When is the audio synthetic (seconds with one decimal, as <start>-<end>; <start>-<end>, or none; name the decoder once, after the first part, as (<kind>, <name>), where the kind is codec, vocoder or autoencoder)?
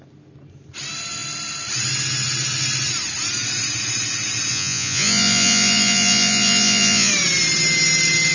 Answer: 4.5-7.1 (vocoder, Vocos)